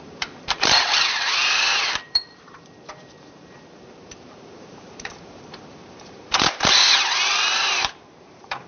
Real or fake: fake